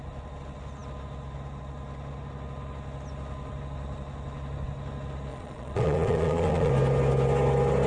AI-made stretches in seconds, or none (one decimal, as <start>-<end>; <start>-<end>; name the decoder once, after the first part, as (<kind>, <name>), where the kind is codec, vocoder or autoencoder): 5.3-6.7 (vocoder, Vocos)